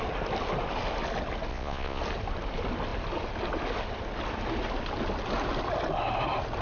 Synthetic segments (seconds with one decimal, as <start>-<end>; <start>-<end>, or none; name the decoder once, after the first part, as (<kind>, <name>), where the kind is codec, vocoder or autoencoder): 1.5-2.0 (vocoder, Vocos)